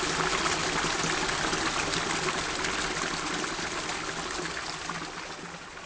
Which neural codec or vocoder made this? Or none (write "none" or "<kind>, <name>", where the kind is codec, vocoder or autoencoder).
none